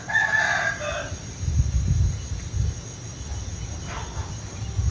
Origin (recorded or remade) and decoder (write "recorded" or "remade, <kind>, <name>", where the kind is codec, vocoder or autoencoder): recorded